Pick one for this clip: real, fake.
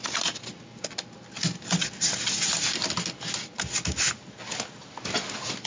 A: real